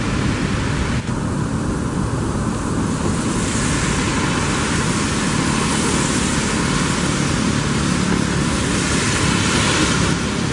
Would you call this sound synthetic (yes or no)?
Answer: no